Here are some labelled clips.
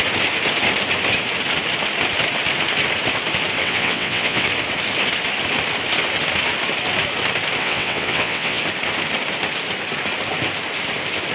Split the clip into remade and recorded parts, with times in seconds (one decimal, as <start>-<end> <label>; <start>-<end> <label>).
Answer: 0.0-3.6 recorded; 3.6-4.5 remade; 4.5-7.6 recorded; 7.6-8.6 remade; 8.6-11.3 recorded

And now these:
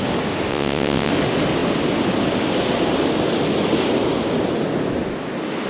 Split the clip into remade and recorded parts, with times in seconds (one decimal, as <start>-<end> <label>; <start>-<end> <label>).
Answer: 0.0-0.5 recorded; 0.5-1.1 remade; 1.1-5.7 recorded

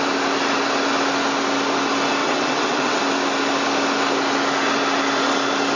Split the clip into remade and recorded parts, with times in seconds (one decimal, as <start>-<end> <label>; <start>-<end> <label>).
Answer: 0.0-2.2 recorded; 2.2-3.0 remade; 3.0-5.8 recorded

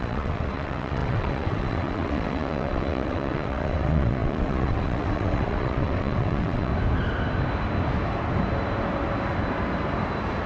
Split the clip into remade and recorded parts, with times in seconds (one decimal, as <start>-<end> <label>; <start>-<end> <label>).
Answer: 0.0-6.7 remade; 6.7-10.5 recorded